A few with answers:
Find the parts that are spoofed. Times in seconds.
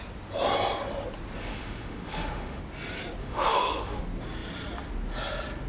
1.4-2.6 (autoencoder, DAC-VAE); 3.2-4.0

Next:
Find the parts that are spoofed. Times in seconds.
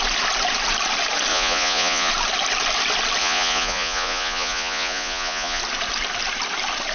1.3-2.1 (vocoder, Vocos); 3.2-5.6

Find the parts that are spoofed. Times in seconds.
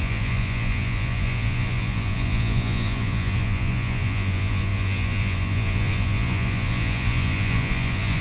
0.0-8.2 (vocoder, Vocos)